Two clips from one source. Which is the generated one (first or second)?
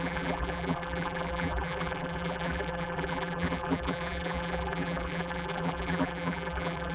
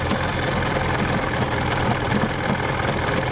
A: first